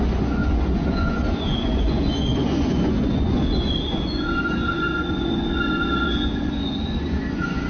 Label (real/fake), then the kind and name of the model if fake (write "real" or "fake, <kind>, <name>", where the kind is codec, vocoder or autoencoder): fake, vocoder, Vocos